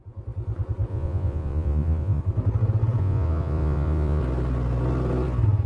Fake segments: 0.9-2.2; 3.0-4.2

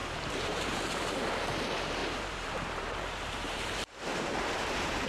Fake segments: 0.0-0.8; 2.0-5.1